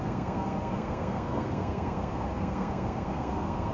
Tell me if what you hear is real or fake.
fake